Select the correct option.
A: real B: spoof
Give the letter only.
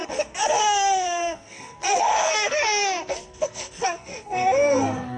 B